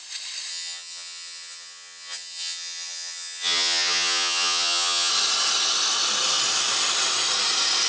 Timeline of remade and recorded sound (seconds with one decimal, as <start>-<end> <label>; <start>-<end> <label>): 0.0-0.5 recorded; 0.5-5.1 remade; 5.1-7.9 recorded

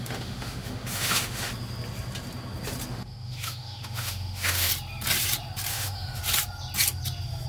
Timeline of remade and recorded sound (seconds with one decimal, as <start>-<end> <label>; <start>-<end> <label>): 0.0-1.5 remade; 1.5-2.9 recorded; 2.9-4.7 remade; 4.7-5.7 recorded; 5.7-6.2 remade; 6.2-7.5 recorded

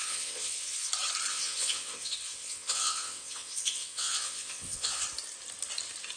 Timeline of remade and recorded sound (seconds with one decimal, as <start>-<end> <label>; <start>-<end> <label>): 0.0-0.9 remade; 0.9-1.3 recorded; 1.3-5.0 remade; 5.0-6.2 recorded